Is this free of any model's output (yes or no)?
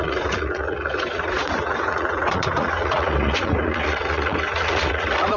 no